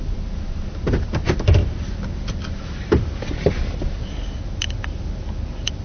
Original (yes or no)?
yes